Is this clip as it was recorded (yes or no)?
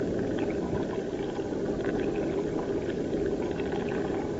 yes